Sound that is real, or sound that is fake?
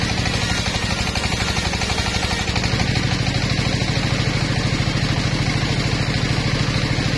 real